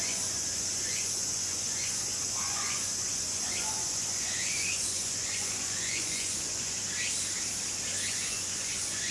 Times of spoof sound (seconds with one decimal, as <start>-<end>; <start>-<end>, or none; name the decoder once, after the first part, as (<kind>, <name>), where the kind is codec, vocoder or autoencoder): 0.0-6.8 (vocoder, Vocos); 8.1-9.1